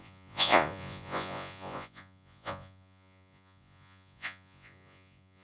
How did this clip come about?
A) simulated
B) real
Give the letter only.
A